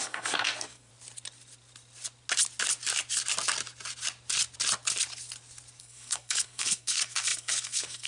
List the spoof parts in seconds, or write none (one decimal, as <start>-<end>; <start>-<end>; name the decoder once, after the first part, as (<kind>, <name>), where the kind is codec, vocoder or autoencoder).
0.0-0.9 (codec, SNAC); 5.8-8.1